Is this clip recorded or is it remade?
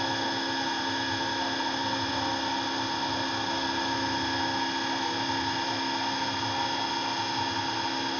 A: recorded